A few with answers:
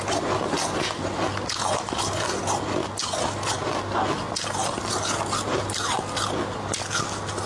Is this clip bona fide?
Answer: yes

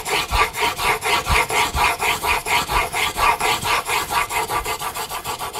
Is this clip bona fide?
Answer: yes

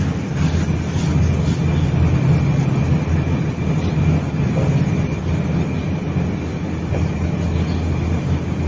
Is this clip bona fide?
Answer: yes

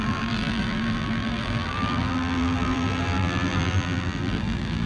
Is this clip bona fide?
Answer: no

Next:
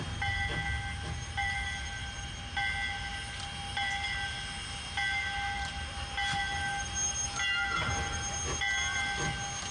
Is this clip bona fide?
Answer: yes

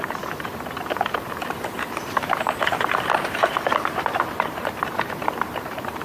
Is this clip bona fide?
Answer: no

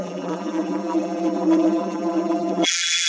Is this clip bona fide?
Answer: no